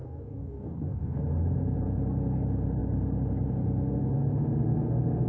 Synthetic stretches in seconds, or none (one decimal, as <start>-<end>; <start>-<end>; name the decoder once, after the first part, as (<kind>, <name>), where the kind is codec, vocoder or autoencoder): 0.0-1.2 (codec, DAC)